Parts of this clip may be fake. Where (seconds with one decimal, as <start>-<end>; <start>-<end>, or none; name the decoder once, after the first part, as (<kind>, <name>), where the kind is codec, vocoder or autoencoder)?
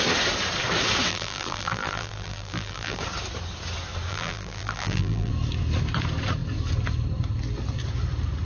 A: 1.1-3.0 (vocoder, BigVGAN v2); 4.1-5.3